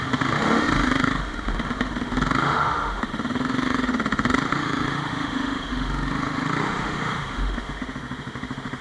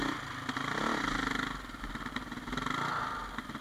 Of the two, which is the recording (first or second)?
second